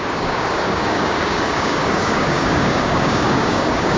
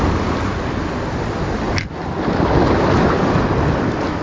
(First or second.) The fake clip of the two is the first